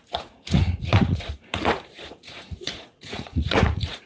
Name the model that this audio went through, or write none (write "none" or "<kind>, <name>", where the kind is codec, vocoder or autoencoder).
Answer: vocoder, Vocos